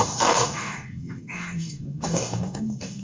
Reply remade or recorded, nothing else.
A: remade